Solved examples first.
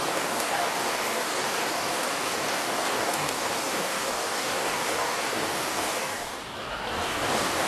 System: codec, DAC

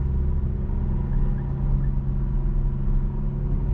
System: none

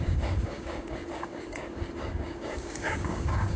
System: codec, DAC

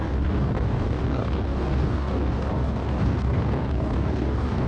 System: codec, DAC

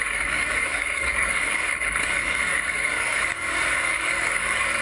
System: codec, DAC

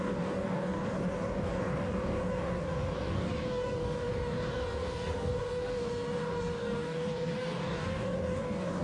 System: codec, DAC